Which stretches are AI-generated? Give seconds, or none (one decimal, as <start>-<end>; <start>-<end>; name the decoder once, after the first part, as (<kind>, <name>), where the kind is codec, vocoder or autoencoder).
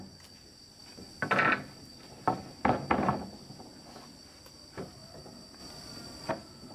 1.9-4.2 (vocoder, BigVGAN v2)